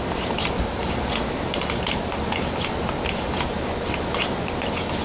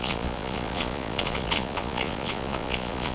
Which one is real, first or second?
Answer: first